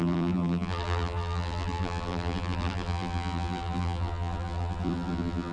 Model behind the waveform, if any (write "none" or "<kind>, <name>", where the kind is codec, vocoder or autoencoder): vocoder, BigVGAN v2